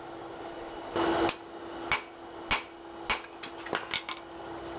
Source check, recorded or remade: recorded